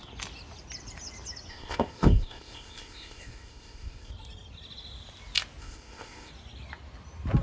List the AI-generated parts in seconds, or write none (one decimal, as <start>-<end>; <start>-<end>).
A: 1.5-4.1; 5.6-6.3